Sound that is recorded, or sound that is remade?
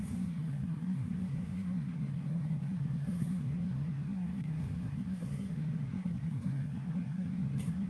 remade